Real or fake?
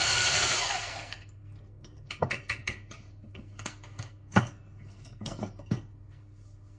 fake